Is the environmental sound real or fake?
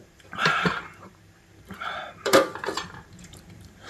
fake